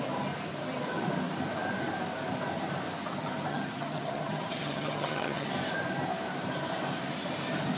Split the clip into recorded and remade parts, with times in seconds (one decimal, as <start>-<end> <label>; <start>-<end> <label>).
0.0-3.5 recorded; 3.5-5.5 remade; 5.5-7.8 recorded